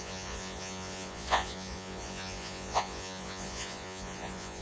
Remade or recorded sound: remade